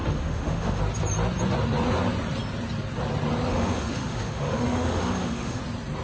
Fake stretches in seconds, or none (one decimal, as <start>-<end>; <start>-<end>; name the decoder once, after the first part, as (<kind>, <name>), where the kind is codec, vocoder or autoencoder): 0.0-0.8 (autoencoder, DAC-VAE); 3.5-5.6